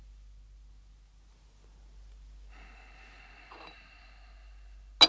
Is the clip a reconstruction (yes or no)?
no